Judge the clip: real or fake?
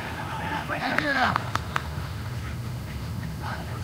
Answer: fake